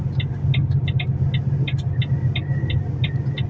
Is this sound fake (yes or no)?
no